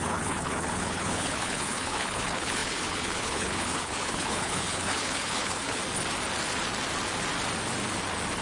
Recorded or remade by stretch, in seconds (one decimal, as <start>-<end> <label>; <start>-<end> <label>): 0.0-5.8 remade; 5.8-8.4 recorded

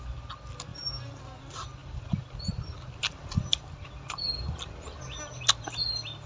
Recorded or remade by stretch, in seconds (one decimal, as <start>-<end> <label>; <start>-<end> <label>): 0.0-6.3 recorded

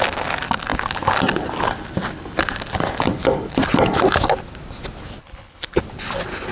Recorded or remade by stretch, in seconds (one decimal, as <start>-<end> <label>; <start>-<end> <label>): 0.0-5.2 recorded; 5.2-5.8 remade; 5.8-6.5 recorded

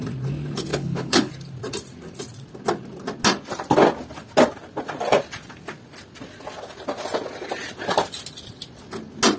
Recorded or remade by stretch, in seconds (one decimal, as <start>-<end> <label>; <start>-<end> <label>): 0.0-0.7 recorded; 0.7-1.3 remade; 1.3-9.4 recorded

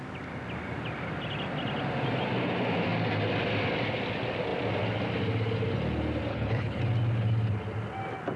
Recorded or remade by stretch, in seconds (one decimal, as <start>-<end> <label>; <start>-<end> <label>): 0.0-6.3 recorded; 6.3-6.8 remade; 6.8-8.4 recorded

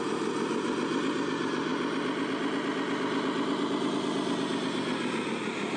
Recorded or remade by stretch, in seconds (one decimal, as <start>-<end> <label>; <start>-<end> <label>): 0.0-5.8 recorded

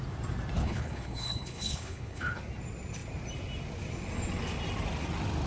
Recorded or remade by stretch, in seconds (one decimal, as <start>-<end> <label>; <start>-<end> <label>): 0.0-0.6 recorded; 0.6-2.4 remade; 2.4-5.5 recorded

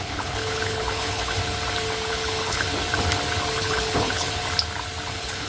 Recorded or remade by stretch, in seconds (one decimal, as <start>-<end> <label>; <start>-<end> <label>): 0.0-1.4 remade; 1.4-2.1 recorded; 2.1-2.7 remade; 2.7-3.6 recorded; 3.6-4.4 remade; 4.4-5.1 recorded; 5.1-5.5 remade